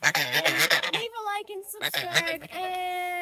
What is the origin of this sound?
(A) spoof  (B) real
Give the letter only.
A